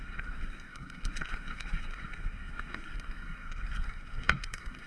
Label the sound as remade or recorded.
remade